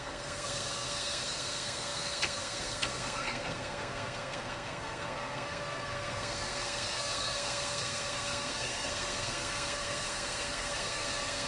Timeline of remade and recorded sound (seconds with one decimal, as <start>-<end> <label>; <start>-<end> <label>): 0.0-11.5 remade